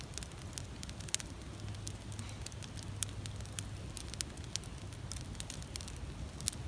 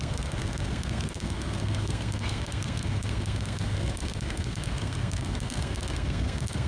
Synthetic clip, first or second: second